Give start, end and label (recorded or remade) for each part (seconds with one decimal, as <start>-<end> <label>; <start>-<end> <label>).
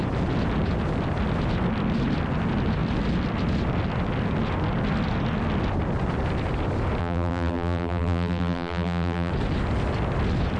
0.0-7.0 recorded; 7.0-9.3 remade; 9.3-10.6 recorded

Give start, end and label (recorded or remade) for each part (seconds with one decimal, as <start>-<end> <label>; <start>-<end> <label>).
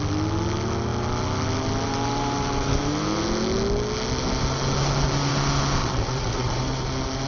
0.0-5.8 recorded; 5.8-6.6 remade; 6.6-7.3 recorded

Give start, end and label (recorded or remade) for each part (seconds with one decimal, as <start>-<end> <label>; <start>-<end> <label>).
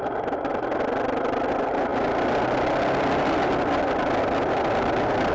0.0-5.3 recorded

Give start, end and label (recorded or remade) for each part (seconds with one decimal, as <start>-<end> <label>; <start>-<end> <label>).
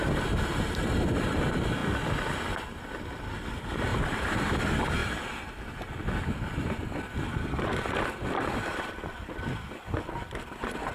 0.0-0.8 remade; 0.8-3.9 recorded; 3.9-4.6 remade; 4.6-10.9 recorded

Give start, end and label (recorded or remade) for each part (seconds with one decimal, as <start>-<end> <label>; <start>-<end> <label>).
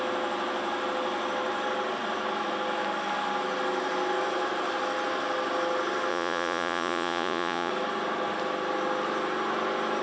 0.0-6.1 recorded; 6.1-7.7 remade; 7.7-10.0 recorded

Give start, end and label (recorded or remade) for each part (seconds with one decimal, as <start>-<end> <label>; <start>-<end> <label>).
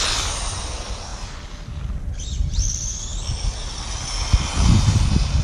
0.0-5.4 recorded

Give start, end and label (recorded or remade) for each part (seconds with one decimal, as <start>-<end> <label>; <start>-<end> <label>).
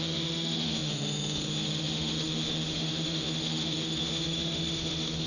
0.0-5.3 remade